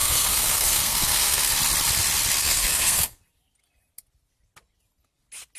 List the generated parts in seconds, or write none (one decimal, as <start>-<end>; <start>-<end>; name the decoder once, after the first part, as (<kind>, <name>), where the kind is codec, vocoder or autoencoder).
0.0-1.5 (codec, SNAC); 2.4-3.2